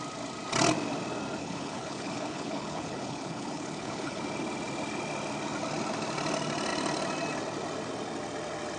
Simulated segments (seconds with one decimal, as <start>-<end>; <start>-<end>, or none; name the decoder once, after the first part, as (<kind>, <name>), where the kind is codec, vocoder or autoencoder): 1.4-4.2 (codec, HILCodec)